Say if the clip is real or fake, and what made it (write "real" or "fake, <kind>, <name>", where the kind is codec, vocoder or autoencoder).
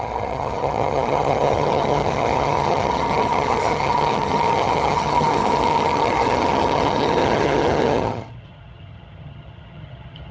fake, vocoder, HiFi-GAN